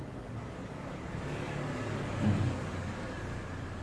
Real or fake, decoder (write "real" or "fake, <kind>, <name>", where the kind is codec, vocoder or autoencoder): fake, codec, DAC